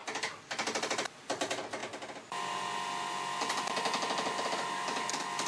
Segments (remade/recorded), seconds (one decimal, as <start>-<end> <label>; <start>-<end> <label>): 0.0-1.8 remade; 1.8-5.1 recorded; 5.1-5.5 remade

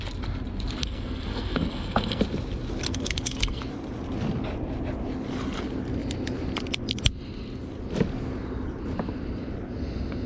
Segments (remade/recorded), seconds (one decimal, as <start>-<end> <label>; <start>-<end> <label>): 0.0-0.8 recorded; 0.8-2.2 remade; 2.2-2.8 recorded; 2.8-3.6 remade; 3.6-10.3 recorded

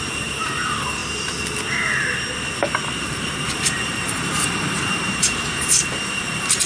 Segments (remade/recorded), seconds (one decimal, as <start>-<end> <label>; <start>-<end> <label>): 0.0-1.0 remade; 1.0-3.0 recorded; 3.0-6.7 remade

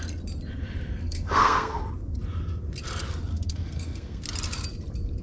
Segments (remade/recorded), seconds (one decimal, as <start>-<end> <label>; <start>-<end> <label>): 0.0-0.9 recorded; 0.9-1.8 remade; 1.8-3.3 recorded; 3.3-4.2 remade; 4.2-5.2 recorded

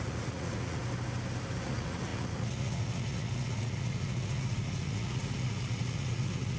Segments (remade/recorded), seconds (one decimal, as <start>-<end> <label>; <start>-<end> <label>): 0.0-0.8 remade; 0.8-1.6 recorded; 1.6-6.6 remade